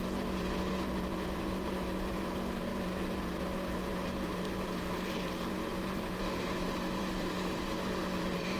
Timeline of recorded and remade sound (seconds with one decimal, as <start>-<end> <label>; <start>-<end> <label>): 0.0-8.6 remade